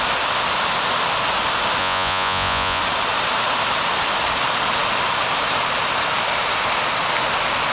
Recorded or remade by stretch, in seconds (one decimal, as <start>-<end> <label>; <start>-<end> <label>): 0.0-1.8 recorded; 1.8-2.8 remade; 2.8-7.7 recorded